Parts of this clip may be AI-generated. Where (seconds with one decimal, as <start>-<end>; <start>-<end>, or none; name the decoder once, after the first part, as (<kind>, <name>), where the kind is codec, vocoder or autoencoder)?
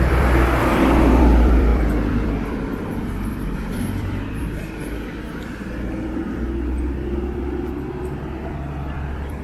0.0-0.7 (vocoder, BigVGAN v2); 1.2-6.2; 7.6-9.4